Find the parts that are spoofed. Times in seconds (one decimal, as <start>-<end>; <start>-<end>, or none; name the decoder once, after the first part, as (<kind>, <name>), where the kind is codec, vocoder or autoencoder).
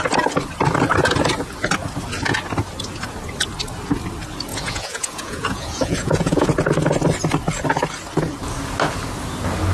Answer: 4.5-6.5 (vocoder, Vocos)